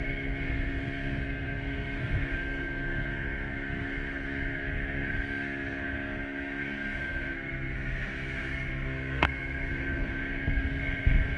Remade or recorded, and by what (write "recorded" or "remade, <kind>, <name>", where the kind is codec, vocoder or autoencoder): remade, codec, SNAC